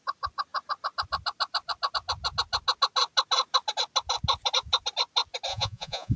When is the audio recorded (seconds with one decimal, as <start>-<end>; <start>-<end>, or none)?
0.0-5.5